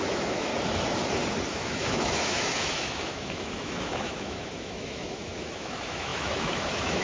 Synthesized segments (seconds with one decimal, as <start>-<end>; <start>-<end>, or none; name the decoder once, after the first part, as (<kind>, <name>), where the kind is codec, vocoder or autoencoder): 0.0-0.5 (autoencoder, DAC-VAE); 1.5-7.0